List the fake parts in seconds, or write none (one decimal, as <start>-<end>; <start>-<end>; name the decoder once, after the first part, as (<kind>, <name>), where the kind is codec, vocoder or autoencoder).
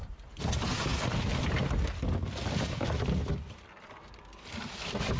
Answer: none